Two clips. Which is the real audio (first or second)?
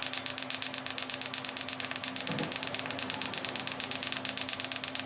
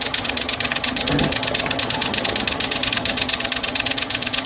first